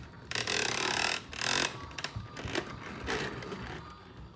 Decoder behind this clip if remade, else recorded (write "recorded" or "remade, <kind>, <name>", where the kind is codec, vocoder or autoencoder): recorded